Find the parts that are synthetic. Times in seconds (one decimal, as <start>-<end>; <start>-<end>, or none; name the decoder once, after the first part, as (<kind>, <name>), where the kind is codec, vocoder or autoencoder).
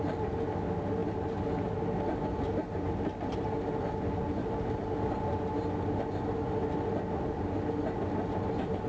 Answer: none